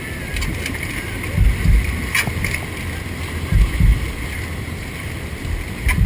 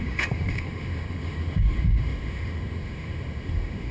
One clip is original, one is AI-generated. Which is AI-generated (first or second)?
second